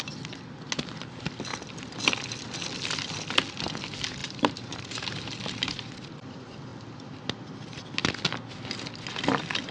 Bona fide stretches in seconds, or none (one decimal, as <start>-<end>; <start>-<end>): 0.0-4.2; 5.9-9.7